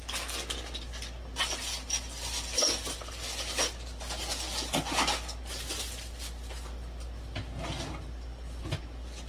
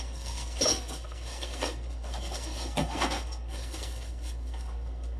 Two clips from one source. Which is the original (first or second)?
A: first